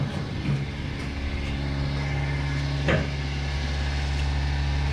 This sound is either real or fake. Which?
real